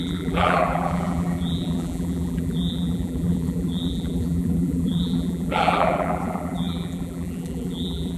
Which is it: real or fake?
fake